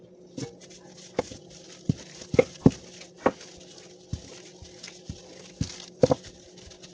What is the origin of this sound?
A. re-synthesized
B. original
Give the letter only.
B